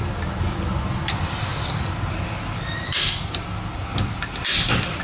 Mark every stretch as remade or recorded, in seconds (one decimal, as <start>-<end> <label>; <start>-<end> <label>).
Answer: 0.0-5.0 recorded